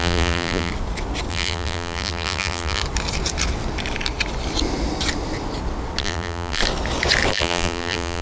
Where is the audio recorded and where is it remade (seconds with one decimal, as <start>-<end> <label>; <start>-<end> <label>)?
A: 0.0-0.7 remade; 0.7-1.3 recorded; 1.3-2.8 remade; 2.8-6.0 recorded; 6.0-6.6 remade; 6.6-7.3 recorded; 7.3-8.2 remade